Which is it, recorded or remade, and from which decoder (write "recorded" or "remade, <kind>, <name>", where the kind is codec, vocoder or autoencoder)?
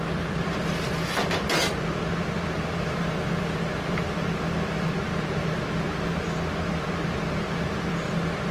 remade, vocoder, BigVGAN v2